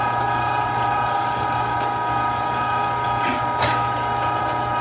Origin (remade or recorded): recorded